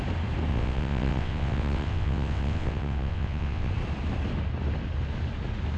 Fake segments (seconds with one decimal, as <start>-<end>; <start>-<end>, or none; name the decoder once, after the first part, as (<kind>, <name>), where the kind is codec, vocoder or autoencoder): 0.5-3.7 (vocoder, WaveNeXt)